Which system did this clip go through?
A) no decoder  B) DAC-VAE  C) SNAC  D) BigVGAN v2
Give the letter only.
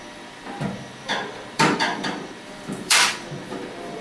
D